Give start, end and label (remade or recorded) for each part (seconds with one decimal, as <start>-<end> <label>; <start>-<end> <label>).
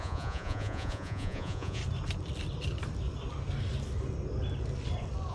0.0-1.8 remade; 1.8-5.3 recorded